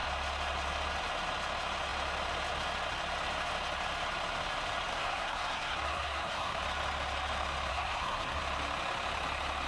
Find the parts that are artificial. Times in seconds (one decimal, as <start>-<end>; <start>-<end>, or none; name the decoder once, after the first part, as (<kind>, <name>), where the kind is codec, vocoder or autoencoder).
4.9-6.6 (codec, SNAC); 7.7-8.4